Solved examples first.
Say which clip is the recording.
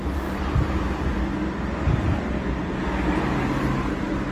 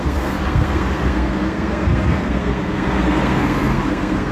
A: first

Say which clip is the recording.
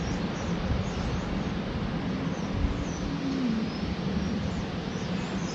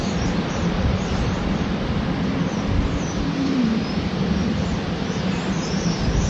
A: first